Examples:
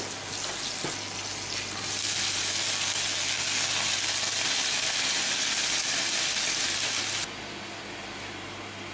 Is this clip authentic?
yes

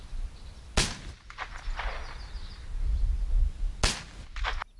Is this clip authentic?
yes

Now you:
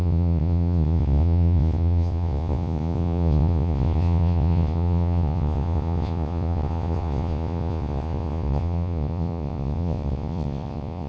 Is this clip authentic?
no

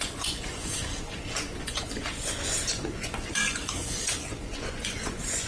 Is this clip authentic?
no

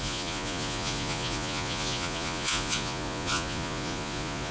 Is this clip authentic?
no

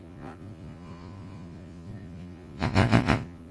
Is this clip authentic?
no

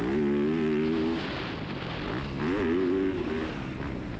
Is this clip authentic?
yes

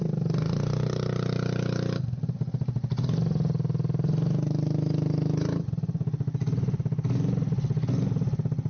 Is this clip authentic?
yes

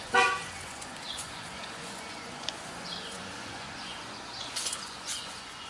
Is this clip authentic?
no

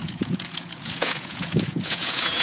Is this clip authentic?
no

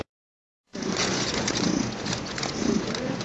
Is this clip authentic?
no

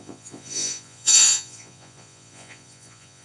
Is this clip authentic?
no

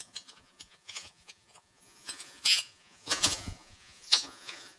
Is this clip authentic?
no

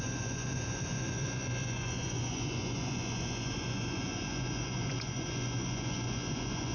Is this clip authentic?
no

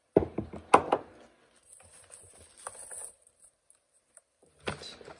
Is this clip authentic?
yes